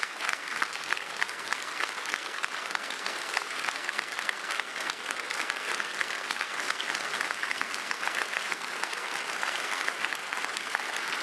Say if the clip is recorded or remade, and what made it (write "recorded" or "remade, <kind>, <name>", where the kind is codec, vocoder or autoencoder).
remade, codec, SNAC